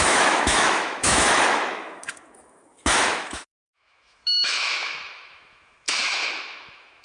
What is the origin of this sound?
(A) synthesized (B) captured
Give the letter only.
A